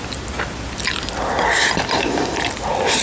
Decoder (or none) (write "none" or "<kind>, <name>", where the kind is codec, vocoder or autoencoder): none